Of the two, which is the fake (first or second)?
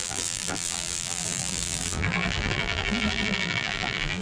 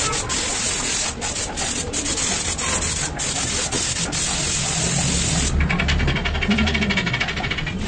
first